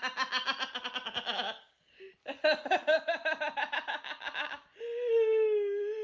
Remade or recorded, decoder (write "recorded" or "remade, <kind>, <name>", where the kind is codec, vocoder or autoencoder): recorded